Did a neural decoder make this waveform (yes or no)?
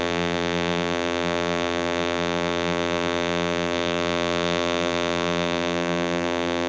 yes